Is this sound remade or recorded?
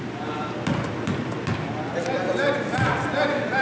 recorded